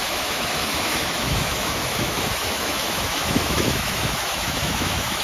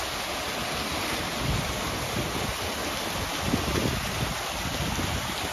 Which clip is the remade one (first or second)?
first